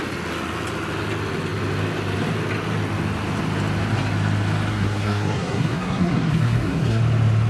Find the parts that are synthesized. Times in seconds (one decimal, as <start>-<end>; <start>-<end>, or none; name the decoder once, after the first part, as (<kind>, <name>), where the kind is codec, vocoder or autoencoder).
4.7-7.0 (codec, SNAC)